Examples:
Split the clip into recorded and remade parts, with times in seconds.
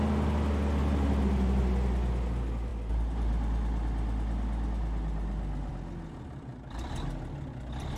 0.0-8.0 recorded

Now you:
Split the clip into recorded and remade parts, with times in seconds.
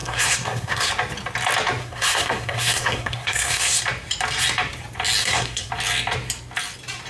0.0-0.9 remade; 0.9-1.8 recorded; 1.8-3.8 remade; 3.8-5.2 recorded; 5.2-5.7 remade; 5.7-7.1 recorded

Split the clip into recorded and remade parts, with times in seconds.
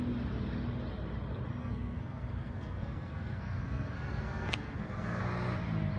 0.0-1.6 recorded; 1.6-5.2 remade; 5.2-6.0 recorded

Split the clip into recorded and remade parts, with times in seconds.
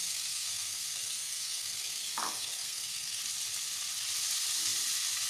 0.0-3.2 remade; 3.2-5.3 recorded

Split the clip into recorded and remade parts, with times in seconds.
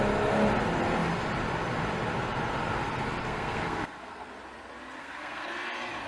0.0-3.2 recorded; 3.2-4.3 remade; 4.3-5.0 recorded; 5.0-5.5 remade; 5.5-6.1 recorded